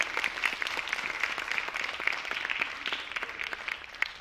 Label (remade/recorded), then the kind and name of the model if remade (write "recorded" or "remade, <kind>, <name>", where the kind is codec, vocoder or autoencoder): recorded